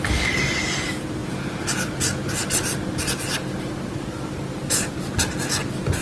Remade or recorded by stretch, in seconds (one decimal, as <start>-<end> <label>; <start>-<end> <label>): 0.0-1.2 recorded; 1.2-1.9 remade; 1.9-6.0 recorded